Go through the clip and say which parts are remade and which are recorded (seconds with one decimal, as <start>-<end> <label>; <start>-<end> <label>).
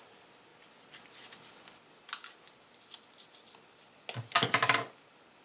0.0-5.4 recorded